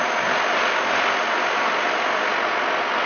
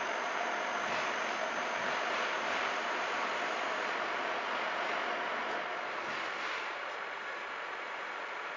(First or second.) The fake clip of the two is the second